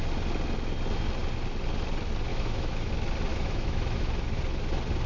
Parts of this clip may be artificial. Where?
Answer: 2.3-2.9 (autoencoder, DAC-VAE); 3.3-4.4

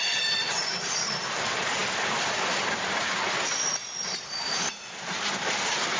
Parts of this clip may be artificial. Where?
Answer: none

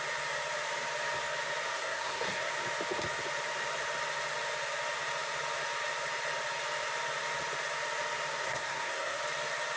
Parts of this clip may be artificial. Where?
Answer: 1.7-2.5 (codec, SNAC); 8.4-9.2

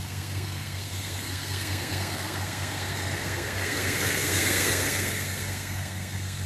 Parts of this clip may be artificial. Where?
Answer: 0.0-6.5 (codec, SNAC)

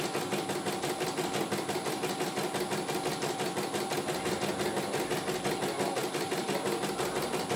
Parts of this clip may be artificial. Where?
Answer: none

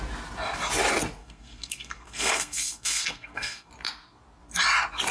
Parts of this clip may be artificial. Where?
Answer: 1.2-3.7 (codec, SNAC)